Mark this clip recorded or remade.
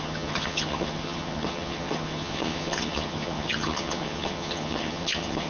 remade